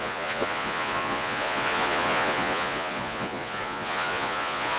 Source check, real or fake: fake